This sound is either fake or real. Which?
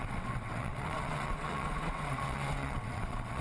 fake